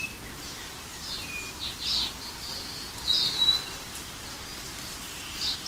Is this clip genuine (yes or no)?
yes